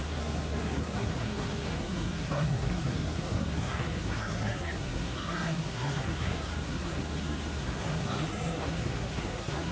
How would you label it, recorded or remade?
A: remade